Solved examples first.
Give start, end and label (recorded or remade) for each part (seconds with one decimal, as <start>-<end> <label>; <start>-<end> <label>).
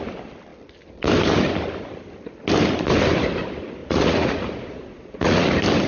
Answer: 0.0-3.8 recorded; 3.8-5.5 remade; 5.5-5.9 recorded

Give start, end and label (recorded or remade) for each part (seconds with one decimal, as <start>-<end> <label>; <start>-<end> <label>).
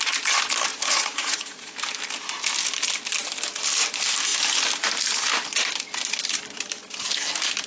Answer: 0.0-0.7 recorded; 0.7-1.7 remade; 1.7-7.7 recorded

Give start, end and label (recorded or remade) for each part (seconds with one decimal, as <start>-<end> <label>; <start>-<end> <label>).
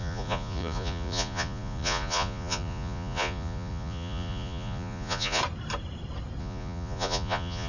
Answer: 0.0-5.4 remade; 5.4-6.4 recorded; 6.4-7.7 remade